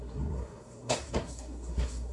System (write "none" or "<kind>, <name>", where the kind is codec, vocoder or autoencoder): codec, SNAC